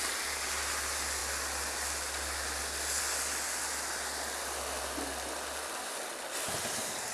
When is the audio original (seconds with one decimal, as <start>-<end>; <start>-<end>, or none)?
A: 0.0-7.1